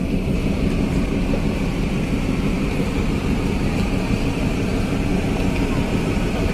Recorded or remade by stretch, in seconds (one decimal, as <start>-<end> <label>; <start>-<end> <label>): 0.0-5.1 remade; 5.1-6.0 recorded; 6.0-6.5 remade